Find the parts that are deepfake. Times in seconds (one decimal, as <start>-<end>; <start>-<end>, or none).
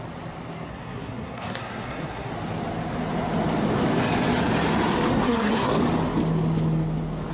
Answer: 0.7-2.3; 5.1-5.8